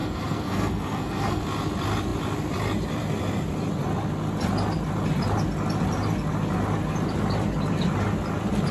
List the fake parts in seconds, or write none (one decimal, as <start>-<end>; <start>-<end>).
0.0-1.4